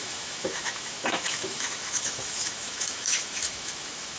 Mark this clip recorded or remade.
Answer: remade